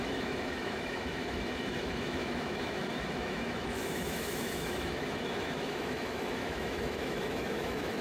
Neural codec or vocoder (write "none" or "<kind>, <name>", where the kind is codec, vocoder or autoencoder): autoencoder, DAC-VAE